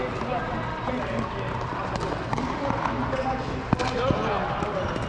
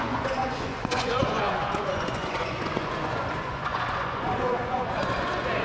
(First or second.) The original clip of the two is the first